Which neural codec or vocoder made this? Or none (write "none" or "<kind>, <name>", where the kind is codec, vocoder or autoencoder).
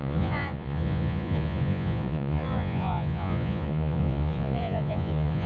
vocoder, Vocos